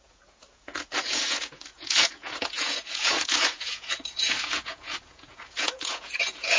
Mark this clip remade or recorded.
remade